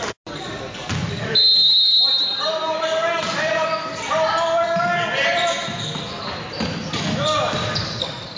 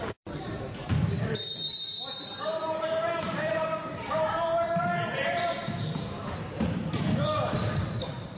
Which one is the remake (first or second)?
second